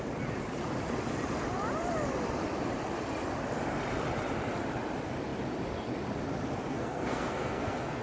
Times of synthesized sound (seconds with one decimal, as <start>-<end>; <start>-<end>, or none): 6.7-8.0